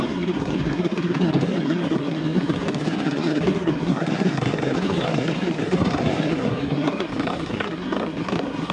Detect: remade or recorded remade